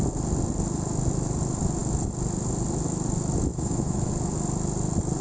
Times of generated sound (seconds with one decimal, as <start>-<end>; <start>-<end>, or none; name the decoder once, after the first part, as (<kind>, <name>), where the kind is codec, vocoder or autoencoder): 3.5-4.1 (autoencoder, DAC-VAE)